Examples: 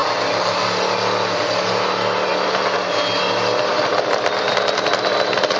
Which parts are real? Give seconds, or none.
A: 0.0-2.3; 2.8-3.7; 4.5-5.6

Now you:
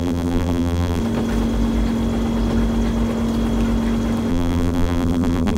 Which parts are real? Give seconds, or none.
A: 1.0-4.3

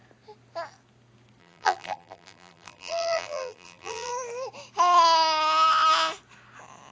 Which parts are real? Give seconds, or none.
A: 0.0-1.4; 4.1-6.9

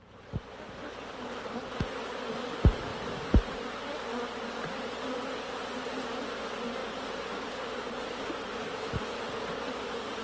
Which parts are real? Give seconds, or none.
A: 0.0-2.9; 3.9-6.8; 8.9-10.2

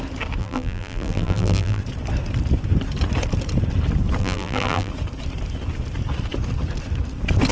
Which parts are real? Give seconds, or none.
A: 0.0-0.4; 1.8-4.2; 4.9-7.5

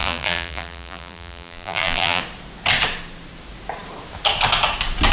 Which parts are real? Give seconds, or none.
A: 2.2-5.1

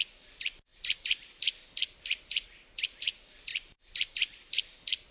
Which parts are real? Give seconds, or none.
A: 0.0-0.7; 1.6-5.1

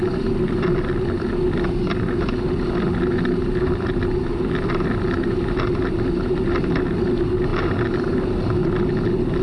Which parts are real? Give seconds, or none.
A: 0.0-9.4